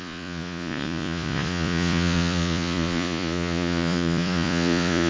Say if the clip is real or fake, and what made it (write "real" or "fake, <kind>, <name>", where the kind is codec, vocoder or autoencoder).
fake, vocoder, Vocos